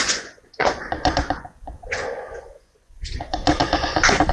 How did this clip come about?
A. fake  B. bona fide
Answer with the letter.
A